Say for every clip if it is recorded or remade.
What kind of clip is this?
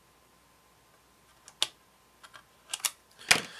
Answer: recorded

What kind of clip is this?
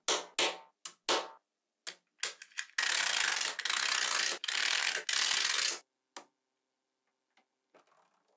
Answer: recorded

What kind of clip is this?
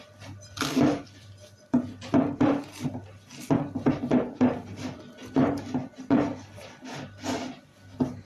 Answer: remade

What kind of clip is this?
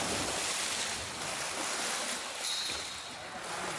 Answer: recorded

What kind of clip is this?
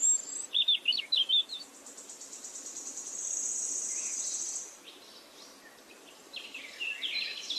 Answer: recorded